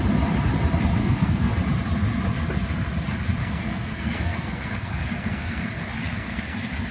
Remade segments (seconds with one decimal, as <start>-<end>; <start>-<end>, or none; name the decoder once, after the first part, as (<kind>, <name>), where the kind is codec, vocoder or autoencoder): 1.0-1.5 (codec, SNAC); 3.4-6.9